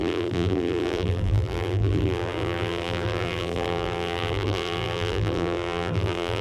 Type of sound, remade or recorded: remade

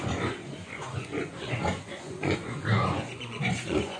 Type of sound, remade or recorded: remade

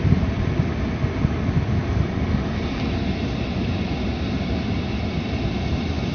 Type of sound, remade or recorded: recorded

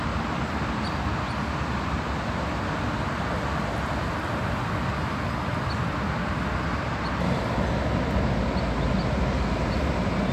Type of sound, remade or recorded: recorded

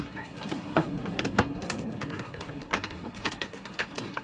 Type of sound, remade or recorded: remade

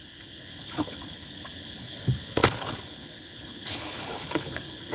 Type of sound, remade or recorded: remade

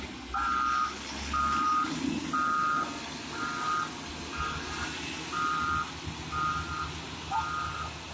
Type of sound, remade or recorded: recorded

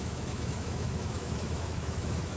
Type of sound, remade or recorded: remade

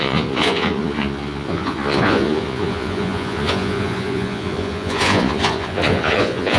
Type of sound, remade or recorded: remade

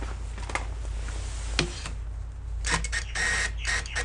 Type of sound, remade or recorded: recorded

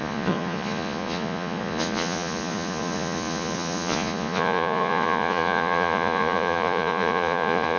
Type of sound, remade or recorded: remade